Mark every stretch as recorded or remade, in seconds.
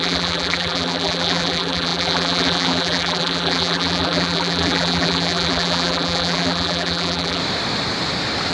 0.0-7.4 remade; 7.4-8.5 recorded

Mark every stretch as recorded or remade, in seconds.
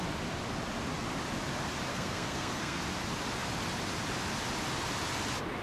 0.0-1.9 recorded; 1.9-2.8 remade; 2.8-5.6 recorded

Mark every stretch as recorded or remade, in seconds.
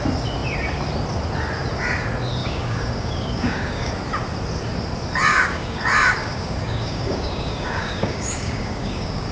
0.0-2.4 recorded; 2.4-3.9 remade; 3.9-5.3 recorded; 5.3-5.8 remade; 5.8-6.2 recorded; 6.2-9.3 remade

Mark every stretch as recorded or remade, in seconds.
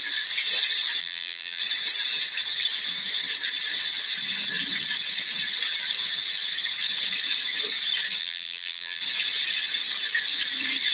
0.0-1.0 recorded; 1.0-1.6 remade; 1.6-8.2 recorded; 8.2-9.0 remade; 9.0-10.9 recorded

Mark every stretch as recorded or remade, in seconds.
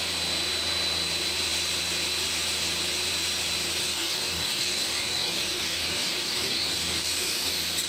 0.0-3.8 recorded; 3.8-7.5 remade; 7.5-7.9 recorded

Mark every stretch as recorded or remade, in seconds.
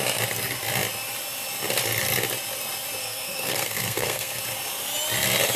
0.0-3.0 recorded; 3.0-4.4 remade; 4.4-5.6 recorded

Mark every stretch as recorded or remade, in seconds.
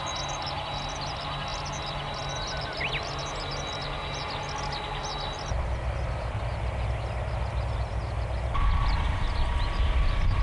0.0-1.5 recorded; 1.5-2.9 remade; 2.9-10.4 recorded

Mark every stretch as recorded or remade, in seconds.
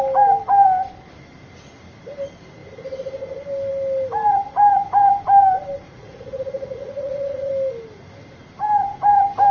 0.0-5.8 recorded; 5.8-7.5 remade; 7.5-9.5 recorded